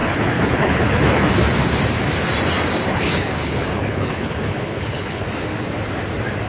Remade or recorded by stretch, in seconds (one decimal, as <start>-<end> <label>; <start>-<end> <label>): 0.0-1.3 remade; 1.3-2.9 recorded; 2.9-5.3 remade; 5.3-6.5 recorded